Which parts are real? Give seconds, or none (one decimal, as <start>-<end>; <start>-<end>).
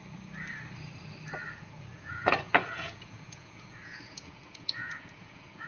0.0-1.5